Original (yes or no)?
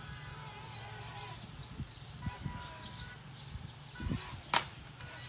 yes